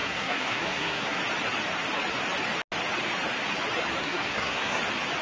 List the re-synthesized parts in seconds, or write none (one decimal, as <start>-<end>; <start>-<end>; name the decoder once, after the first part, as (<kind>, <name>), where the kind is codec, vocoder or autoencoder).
0.0-1.2 (codec, SNAC); 4.0-4.8